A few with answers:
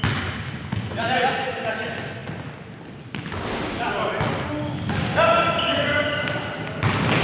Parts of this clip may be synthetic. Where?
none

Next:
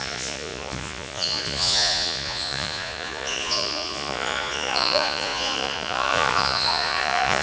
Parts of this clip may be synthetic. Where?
0.0-7.4 (vocoder, Vocos)

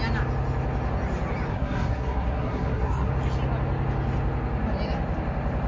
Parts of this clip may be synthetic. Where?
1.5-3.1 (codec, SNAC)

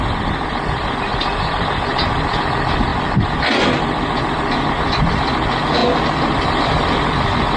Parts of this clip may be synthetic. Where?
none